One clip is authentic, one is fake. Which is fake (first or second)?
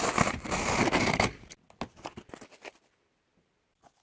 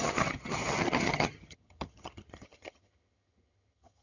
second